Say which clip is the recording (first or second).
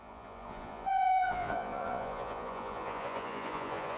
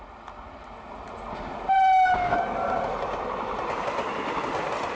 second